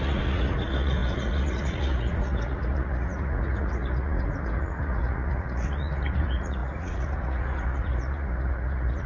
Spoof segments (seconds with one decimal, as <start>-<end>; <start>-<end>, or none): 0.0-9.1